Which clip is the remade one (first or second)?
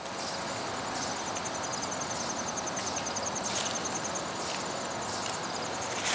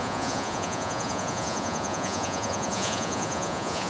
second